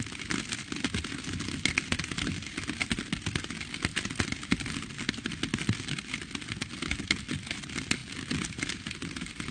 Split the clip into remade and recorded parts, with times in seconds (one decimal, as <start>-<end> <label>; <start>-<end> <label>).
0.0-9.5 recorded

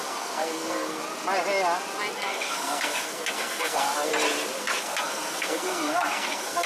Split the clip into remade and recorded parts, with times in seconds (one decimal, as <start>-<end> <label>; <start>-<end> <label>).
0.0-1.0 remade; 1.0-2.1 recorded; 2.1-4.1 remade; 4.1-4.6 recorded; 4.6-6.7 remade

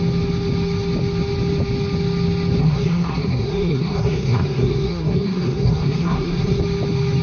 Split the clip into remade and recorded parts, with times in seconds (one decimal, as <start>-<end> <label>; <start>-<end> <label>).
0.0-2.6 recorded; 2.6-6.6 remade; 6.6-7.2 recorded

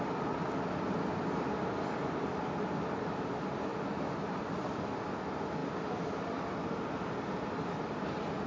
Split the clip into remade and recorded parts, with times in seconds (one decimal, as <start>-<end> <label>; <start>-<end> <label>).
0.0-8.5 recorded

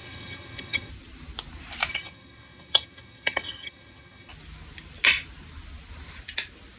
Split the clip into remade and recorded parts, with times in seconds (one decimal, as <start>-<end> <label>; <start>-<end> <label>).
0.0-0.9 remade; 0.9-1.9 recorded; 1.9-4.3 remade; 4.3-6.8 recorded

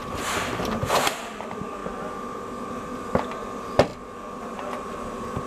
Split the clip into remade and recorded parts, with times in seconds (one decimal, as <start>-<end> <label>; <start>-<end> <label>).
0.0-0.6 recorded; 0.6-1.8 remade; 1.8-2.7 recorded; 2.7-3.9 remade; 3.9-4.4 recorded; 4.4-5.5 remade